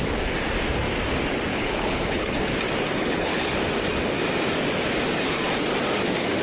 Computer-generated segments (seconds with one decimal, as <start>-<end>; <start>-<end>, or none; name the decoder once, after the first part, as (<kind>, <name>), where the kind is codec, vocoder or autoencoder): 1.5-2.4 (codec, HILCodec); 3.0-3.6